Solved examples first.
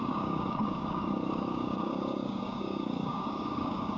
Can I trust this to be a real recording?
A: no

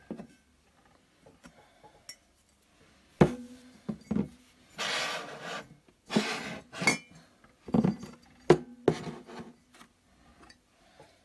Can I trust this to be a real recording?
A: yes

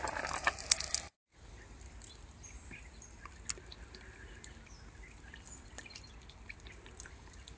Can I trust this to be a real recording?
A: yes